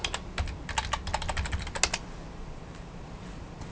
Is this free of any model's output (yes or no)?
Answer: yes